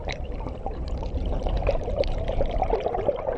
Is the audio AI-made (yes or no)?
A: yes